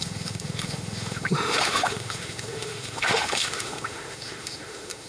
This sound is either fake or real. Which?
fake